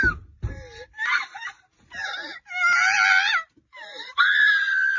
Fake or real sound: real